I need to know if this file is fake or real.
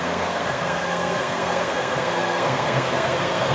fake